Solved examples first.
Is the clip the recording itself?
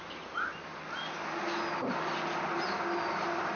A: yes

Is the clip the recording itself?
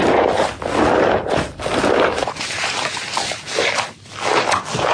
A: yes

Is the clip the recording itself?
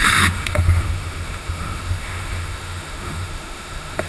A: no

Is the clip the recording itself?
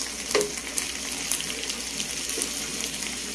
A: yes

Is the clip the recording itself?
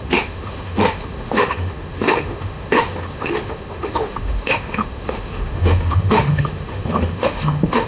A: no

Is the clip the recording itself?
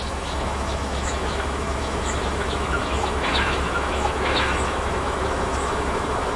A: no